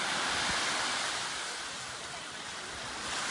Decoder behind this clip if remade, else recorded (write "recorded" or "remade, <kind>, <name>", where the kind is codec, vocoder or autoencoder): recorded